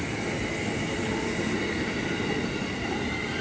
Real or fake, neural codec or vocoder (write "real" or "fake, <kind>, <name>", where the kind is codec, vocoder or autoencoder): real